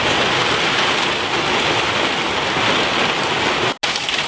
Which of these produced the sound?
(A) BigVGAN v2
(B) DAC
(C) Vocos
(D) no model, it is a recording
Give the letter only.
D